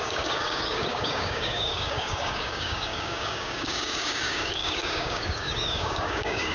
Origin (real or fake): fake